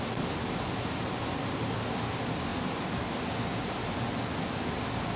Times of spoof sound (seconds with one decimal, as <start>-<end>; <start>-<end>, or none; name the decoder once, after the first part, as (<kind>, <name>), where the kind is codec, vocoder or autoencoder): none